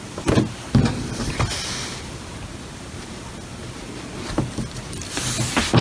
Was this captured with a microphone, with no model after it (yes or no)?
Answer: yes